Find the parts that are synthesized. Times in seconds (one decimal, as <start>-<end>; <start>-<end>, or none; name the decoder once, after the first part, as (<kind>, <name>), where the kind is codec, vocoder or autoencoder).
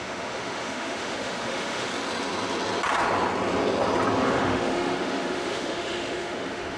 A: 0.0-1.9 (autoencoder, DAC-VAE); 4.2-6.8